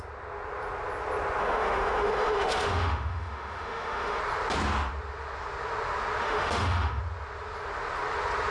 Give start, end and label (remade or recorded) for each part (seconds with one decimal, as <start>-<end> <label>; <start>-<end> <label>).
0.0-1.4 recorded; 1.4-4.2 remade; 4.2-6.2 recorded; 6.2-7.0 remade; 7.0-8.5 recorded